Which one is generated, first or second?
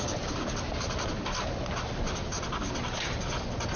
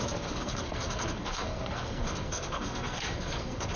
second